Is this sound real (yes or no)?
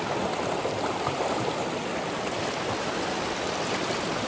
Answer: yes